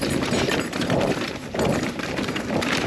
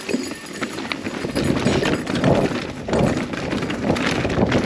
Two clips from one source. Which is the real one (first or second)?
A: second